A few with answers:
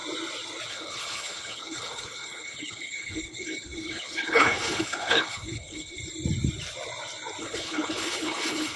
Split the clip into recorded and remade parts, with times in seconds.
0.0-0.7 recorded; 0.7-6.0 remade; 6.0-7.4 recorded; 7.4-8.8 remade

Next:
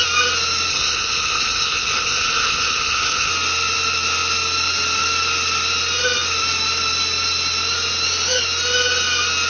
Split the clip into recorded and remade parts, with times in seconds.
0.0-0.7 recorded; 0.7-3.3 remade; 3.3-9.5 recorded

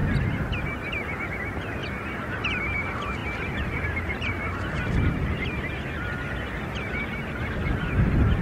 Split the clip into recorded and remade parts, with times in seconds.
0.0-0.6 recorded; 0.6-1.8 remade; 1.8-2.3 recorded; 2.3-3.2 remade; 3.2-3.8 recorded; 3.8-8.4 remade

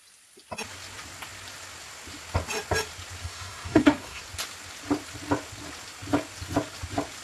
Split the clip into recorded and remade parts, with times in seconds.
0.0-3.2 recorded; 3.2-4.2 remade; 4.2-7.2 recorded